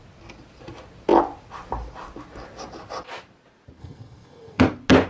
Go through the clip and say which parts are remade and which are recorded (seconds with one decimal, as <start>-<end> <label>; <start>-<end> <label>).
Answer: 0.0-3.8 recorded; 3.8-4.6 remade; 4.6-5.1 recorded